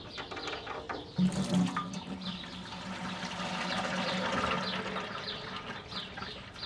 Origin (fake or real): real